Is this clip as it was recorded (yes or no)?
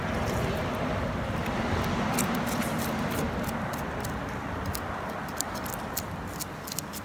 yes